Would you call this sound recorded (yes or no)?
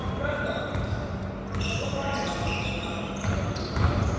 no